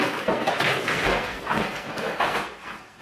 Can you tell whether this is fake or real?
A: fake